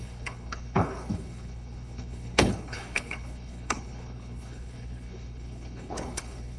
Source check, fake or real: fake